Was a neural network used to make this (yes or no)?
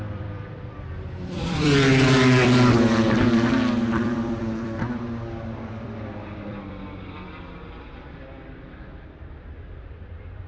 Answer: yes